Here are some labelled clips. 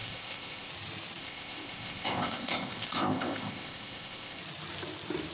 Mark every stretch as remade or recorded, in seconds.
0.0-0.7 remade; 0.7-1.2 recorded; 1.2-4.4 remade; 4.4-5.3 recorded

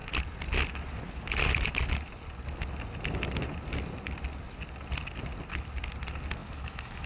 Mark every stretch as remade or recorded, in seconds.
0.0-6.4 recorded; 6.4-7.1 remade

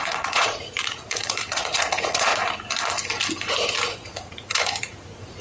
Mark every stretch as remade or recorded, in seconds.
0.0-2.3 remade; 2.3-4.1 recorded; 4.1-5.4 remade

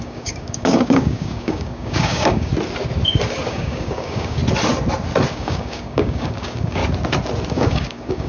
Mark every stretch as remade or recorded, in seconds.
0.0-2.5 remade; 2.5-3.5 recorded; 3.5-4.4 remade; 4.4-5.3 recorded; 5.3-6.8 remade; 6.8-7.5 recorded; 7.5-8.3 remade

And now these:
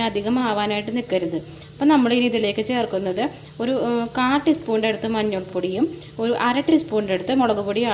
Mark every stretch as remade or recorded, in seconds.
0.0-5.5 recorded; 5.5-6.1 remade; 6.1-7.9 recorded

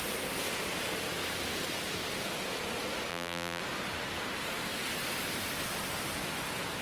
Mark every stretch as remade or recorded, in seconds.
0.0-3.1 recorded; 3.1-3.6 remade; 3.6-6.8 recorded